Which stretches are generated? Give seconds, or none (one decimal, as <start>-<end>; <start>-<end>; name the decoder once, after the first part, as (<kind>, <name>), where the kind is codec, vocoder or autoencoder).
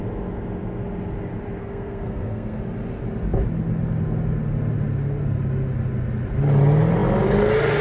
1.6-2.6 (codec, SNAC)